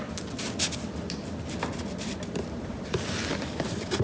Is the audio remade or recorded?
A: remade